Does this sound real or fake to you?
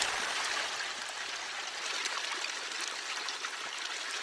real